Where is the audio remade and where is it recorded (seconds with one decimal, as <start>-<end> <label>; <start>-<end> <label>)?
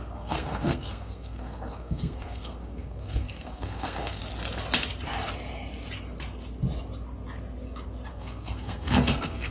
0.0-4.2 remade; 4.2-8.1 recorded; 8.1-9.5 remade